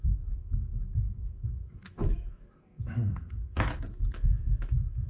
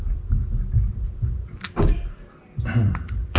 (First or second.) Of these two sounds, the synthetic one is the first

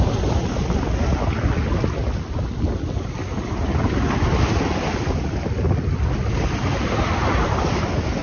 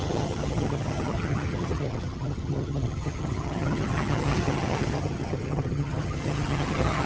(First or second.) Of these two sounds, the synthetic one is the second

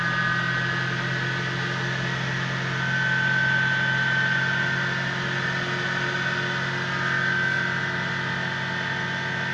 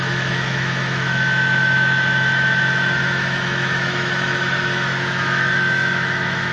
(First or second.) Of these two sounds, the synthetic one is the second